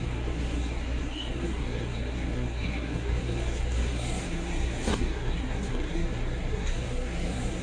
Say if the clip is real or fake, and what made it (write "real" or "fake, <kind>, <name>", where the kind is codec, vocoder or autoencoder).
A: fake, codec, SNAC